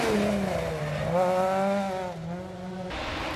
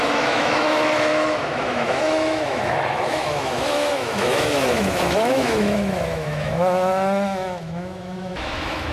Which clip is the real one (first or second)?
first